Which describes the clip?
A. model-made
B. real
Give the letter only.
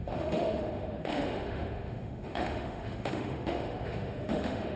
A